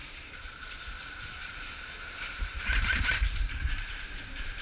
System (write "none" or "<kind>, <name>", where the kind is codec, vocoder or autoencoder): vocoder, BigVGAN v2